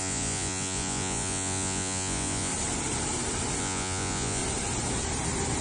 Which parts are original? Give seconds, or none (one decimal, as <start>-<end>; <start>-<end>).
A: 2.5-3.6; 4.4-5.6